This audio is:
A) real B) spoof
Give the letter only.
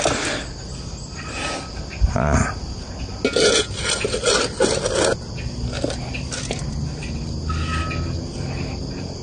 A